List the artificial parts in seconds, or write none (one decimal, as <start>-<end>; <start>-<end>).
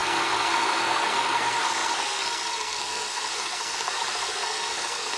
0.0-5.2